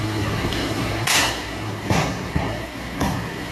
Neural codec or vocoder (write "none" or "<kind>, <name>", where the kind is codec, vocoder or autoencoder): codec, SNAC